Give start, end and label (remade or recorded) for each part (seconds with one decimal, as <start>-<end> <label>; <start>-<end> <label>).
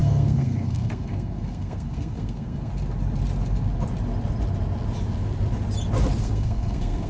0.0-2.7 remade; 2.7-6.2 recorded; 6.2-7.1 remade